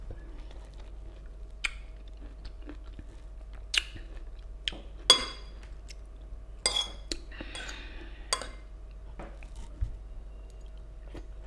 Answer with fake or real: real